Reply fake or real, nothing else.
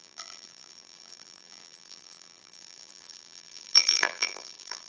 fake